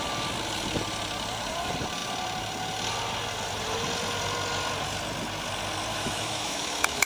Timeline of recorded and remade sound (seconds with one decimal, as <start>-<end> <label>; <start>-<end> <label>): 0.0-5.9 recorded; 5.9-7.1 remade